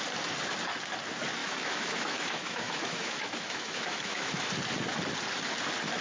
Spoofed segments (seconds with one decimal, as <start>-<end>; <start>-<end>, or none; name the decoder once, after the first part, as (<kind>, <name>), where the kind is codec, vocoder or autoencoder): 1.4-4.5 (autoencoder, DAC-VAE)